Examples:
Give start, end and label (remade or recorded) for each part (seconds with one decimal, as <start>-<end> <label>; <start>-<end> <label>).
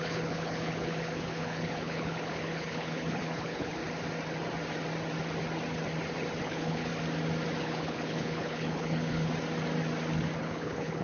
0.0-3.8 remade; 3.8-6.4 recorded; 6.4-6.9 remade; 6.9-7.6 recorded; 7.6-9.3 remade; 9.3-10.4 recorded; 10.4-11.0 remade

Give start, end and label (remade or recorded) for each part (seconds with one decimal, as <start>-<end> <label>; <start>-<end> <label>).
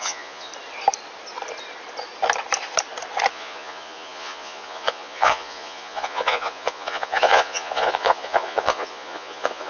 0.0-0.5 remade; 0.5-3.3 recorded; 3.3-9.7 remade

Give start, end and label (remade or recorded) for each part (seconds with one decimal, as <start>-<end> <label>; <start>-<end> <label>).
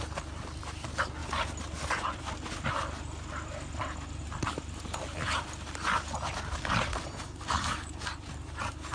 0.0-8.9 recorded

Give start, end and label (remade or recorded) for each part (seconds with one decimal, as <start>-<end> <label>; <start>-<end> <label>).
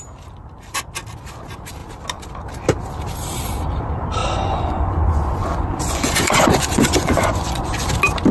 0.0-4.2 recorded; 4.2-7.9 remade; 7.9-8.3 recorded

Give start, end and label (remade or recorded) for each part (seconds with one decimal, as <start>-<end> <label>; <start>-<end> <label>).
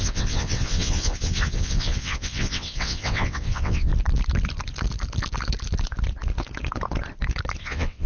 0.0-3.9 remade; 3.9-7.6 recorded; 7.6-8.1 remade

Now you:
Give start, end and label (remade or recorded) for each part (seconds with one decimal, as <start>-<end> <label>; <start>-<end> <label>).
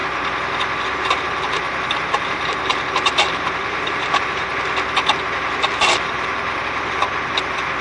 0.0-1.0 recorded; 1.0-4.5 remade; 4.5-5.7 recorded; 5.7-7.0 remade; 7.0-7.8 recorded